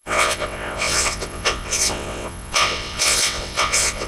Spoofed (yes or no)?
yes